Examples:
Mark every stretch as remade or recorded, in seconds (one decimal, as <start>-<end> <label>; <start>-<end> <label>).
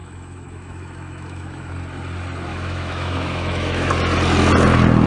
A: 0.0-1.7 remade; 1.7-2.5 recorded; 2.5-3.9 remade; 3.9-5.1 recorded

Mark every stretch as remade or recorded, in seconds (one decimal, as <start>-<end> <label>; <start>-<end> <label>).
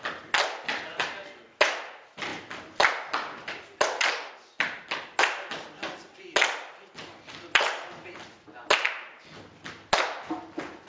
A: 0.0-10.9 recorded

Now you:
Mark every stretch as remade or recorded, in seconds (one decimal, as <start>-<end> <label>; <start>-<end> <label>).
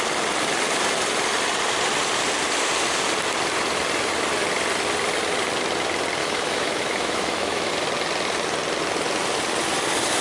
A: 0.0-6.2 recorded; 6.2-7.7 remade; 7.7-10.2 recorded